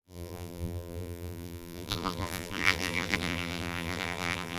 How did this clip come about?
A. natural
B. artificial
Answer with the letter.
B